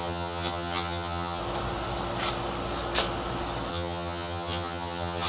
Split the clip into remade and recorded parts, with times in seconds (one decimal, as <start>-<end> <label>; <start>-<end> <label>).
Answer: 0.0-1.4 remade; 1.4-3.7 recorded; 3.7-5.3 remade